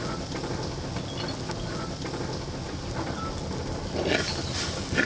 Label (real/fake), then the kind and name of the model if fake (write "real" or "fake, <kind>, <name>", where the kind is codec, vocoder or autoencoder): real